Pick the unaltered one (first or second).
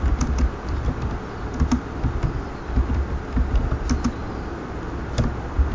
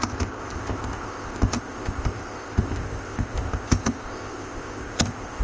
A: first